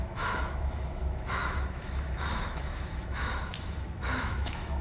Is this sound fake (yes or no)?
yes